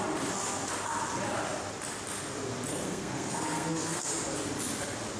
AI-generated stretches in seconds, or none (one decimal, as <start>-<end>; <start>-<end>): 2.7-4.1